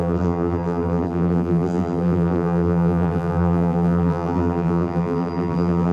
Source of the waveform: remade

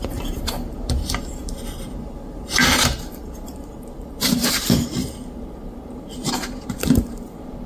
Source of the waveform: remade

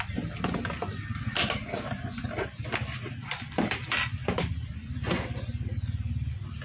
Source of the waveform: recorded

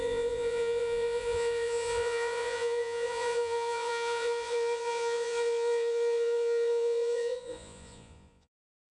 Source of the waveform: remade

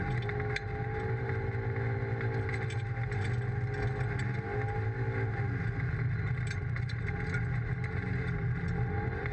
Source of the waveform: recorded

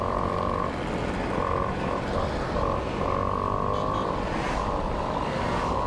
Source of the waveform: remade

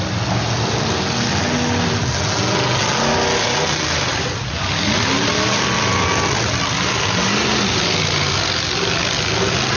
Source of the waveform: recorded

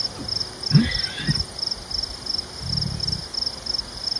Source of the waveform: recorded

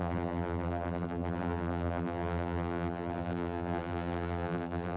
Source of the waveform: remade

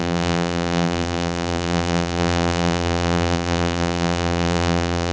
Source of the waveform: remade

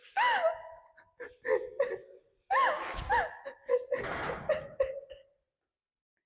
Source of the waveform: recorded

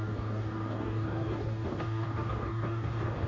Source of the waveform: remade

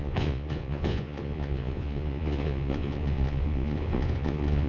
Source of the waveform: remade